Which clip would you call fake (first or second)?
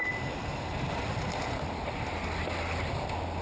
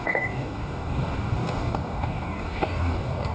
second